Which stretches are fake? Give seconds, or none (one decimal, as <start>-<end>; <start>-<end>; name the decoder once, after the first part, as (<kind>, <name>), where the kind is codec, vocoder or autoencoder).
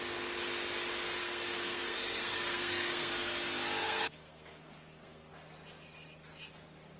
1.2-3.1 (codec, SNAC); 3.8-5.3